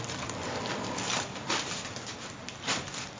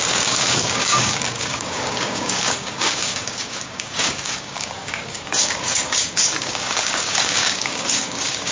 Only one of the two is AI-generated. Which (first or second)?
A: second